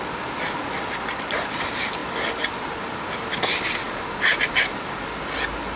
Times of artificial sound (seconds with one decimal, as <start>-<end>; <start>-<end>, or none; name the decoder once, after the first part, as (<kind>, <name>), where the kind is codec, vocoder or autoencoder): none